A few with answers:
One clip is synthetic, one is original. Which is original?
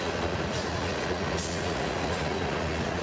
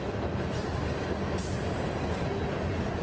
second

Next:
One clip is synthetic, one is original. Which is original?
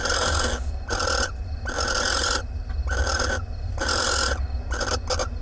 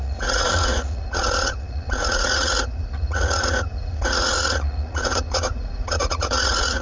first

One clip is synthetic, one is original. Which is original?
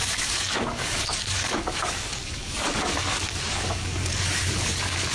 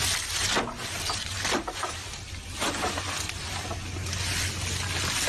second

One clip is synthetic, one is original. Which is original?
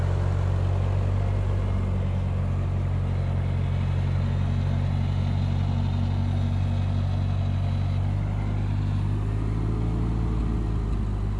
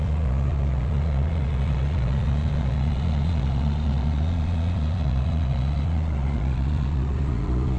first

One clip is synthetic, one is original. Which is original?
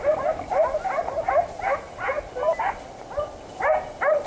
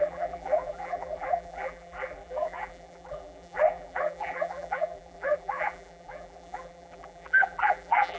first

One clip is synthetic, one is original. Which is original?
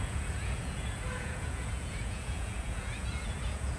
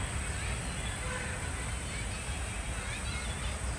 second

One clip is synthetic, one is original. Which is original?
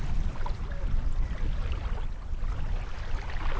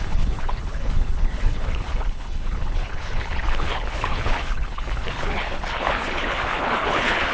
first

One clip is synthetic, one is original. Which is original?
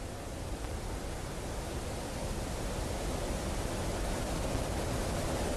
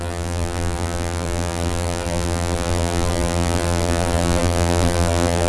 first